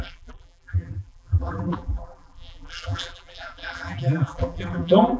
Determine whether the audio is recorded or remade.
remade